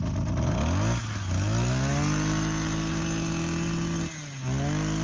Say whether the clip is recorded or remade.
recorded